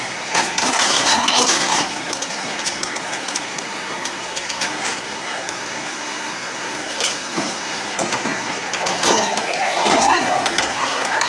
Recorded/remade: remade